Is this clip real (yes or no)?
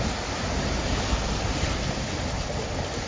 yes